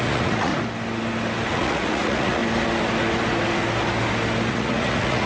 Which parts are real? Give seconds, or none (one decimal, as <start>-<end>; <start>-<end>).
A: 0.5-1.5; 2.4-4.5